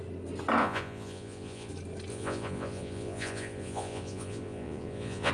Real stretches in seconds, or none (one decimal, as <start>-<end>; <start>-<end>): 0.0-0.6; 1.7-2.1